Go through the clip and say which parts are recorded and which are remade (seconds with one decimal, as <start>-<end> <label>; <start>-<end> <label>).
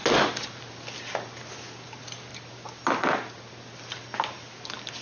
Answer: 0.0-5.0 recorded